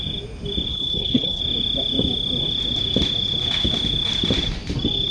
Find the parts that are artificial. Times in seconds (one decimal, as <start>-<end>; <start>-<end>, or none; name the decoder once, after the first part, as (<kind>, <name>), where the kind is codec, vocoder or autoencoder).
0.7-1.4 (codec, HILCodec)